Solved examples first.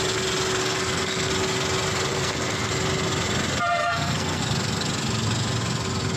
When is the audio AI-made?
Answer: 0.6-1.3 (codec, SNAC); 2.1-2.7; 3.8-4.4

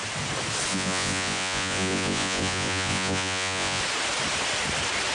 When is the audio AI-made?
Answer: 0.7-3.8 (vocoder, Vocos)

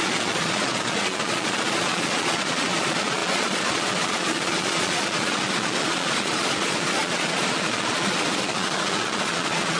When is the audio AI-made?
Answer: 0.0-9.8 (vocoder, Vocos)

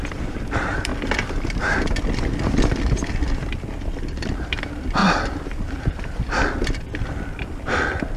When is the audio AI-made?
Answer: 0.0-0.9 (vocoder, BigVGAN v2); 4.6-8.2

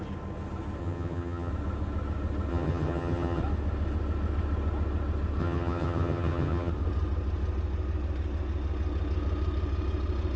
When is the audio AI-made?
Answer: 0.8-1.5 (vocoder, HiFi-GAN); 2.5-3.4; 5.4-6.7

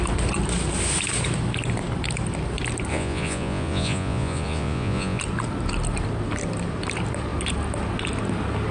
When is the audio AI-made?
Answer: 2.9-5.2 (vocoder, Vocos)